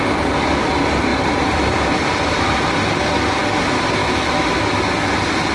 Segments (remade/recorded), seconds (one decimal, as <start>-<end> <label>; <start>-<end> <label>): 0.0-1.1 recorded; 1.1-3.0 remade; 3.0-4.0 recorded; 4.0-4.6 remade; 4.6-5.5 recorded